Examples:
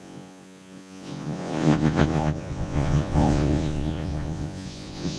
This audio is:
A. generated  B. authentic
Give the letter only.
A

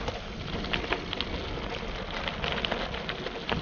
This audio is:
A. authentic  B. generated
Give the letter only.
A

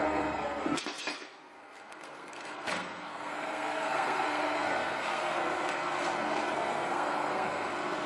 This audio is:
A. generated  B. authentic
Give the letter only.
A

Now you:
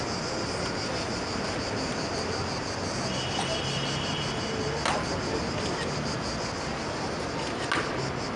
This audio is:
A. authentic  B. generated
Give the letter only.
A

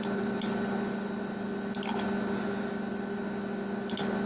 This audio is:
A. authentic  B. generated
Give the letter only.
A